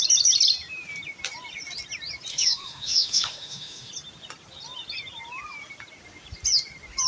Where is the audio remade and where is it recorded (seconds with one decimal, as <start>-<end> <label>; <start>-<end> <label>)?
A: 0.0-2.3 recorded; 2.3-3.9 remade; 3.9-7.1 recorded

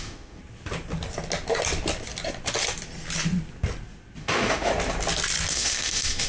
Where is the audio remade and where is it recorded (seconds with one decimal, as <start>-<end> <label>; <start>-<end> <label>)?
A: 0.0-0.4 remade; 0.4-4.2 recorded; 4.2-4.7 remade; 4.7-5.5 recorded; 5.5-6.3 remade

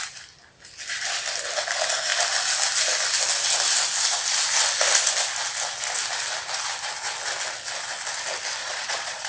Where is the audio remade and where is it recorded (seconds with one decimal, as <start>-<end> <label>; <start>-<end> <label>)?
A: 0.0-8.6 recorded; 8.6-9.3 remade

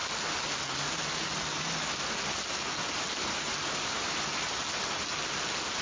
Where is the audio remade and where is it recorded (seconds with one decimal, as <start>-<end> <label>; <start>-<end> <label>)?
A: 0.0-5.8 recorded